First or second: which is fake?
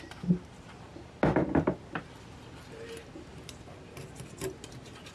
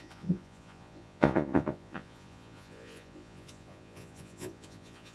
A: second